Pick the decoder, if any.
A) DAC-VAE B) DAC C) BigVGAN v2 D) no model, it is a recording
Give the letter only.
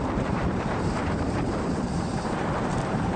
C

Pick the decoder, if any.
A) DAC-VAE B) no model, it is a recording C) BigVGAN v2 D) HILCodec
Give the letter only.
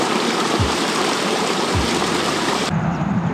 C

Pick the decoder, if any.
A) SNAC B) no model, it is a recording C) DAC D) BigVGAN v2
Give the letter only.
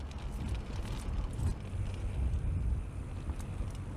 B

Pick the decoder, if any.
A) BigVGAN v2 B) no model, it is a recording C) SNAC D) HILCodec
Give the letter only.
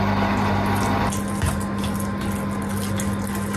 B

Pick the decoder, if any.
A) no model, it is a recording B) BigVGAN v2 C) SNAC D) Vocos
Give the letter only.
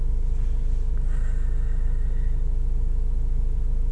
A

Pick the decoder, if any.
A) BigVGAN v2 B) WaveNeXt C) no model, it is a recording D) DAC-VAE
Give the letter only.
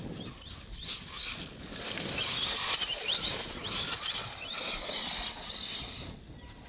C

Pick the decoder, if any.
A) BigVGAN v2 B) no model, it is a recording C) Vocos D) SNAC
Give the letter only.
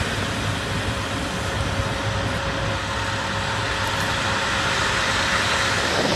B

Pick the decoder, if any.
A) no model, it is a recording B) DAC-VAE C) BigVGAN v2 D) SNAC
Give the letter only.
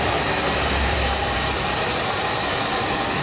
C